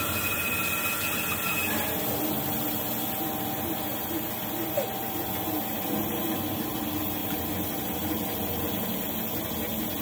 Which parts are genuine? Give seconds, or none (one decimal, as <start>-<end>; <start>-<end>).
0.0-10.0